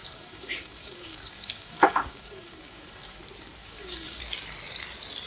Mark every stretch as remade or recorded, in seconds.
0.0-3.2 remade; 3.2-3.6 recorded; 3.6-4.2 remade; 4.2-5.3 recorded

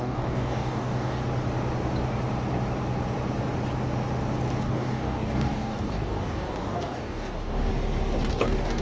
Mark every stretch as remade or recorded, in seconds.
0.0-1.2 remade; 1.2-4.6 recorded; 4.6-7.7 remade; 7.7-8.3 recorded; 8.3-8.8 remade

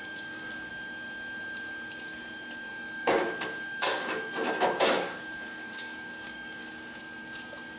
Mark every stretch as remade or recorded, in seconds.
0.0-0.7 remade; 0.7-2.7 recorded; 2.7-7.0 remade; 7.0-7.8 recorded

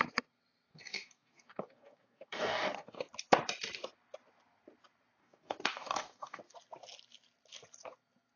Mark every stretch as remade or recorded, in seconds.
0.0-0.7 recorded; 0.7-3.1 remade; 3.1-5.2 recorded; 5.2-6.4 remade; 6.4-8.4 recorded